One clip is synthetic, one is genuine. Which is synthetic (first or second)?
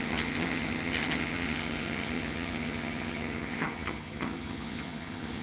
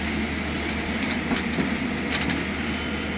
first